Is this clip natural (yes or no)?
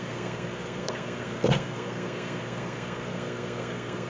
no